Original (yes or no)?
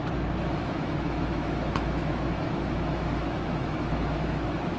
no